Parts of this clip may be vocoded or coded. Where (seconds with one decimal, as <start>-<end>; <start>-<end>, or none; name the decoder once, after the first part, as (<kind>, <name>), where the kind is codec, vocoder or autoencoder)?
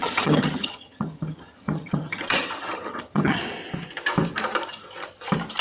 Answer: 0.0-3.4 (vocoder, HiFi-GAN)